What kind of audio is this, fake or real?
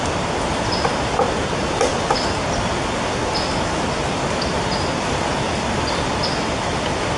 real